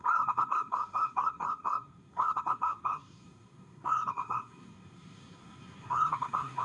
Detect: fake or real fake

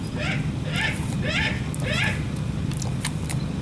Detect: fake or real real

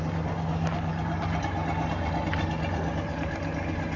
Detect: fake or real real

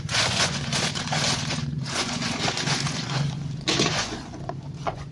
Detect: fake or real fake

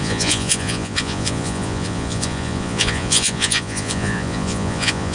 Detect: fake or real fake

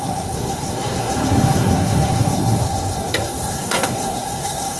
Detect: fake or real fake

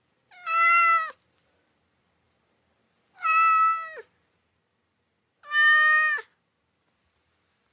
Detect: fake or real real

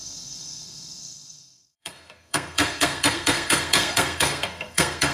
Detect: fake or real fake